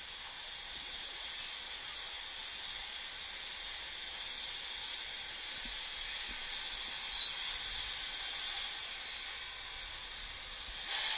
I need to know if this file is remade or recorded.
recorded